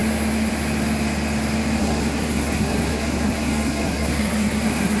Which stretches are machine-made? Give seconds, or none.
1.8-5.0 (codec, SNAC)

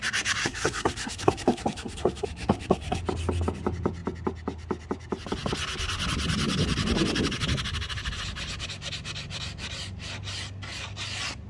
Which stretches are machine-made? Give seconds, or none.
0.4-3.0 (codec, SNAC)

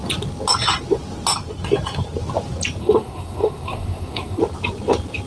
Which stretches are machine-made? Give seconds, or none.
2.8-4.4 (codec, SNAC)

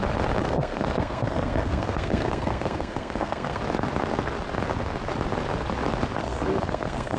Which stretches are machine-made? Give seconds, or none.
0.4-3.6 (codec, SNAC); 6.2-7.2

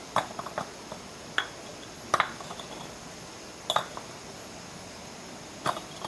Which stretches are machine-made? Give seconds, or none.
none